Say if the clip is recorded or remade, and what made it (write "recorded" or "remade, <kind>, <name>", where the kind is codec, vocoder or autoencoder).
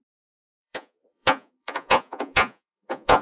remade, vocoder, Vocos